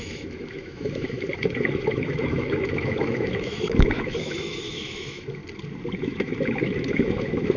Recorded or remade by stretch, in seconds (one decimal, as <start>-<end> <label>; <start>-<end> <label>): 0.0-5.4 remade; 5.4-6.0 recorded; 6.0-7.6 remade